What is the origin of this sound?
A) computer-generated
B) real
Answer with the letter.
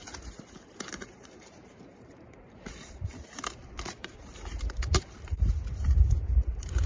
A